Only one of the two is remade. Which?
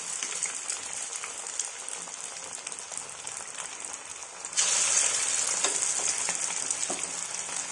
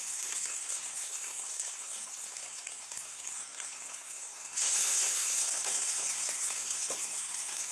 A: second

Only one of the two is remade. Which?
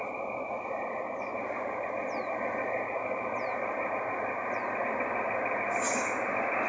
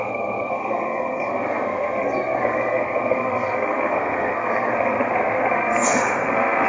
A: second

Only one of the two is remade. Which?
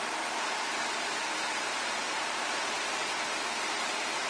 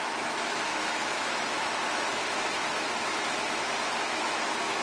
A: second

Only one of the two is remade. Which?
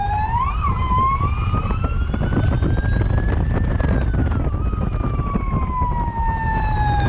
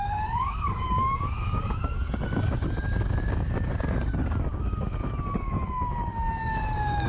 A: second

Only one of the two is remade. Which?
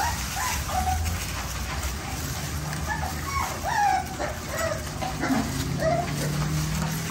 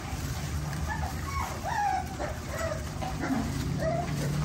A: second